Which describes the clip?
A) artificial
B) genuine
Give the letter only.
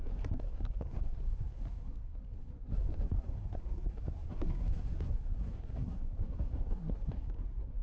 A